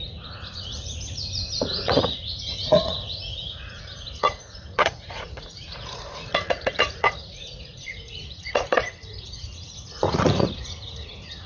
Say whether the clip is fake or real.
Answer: fake